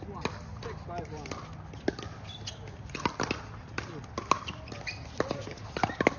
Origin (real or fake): real